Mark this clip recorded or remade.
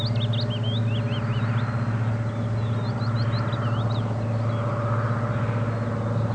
recorded